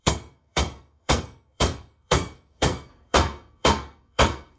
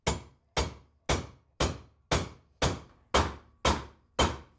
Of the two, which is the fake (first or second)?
first